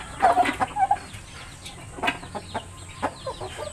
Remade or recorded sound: recorded